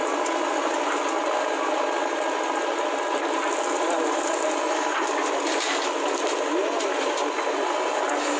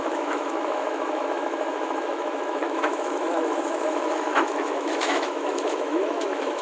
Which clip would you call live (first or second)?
first